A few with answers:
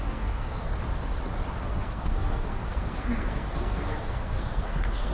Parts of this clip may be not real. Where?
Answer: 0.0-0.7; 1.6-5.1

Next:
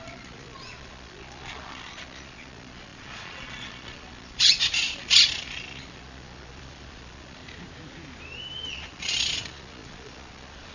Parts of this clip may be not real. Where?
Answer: 0.0-7.4; 8.7-10.7

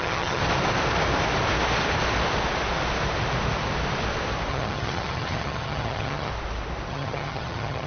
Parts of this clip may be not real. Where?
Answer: 0.0-0.4; 4.5-6.3; 6.9-7.9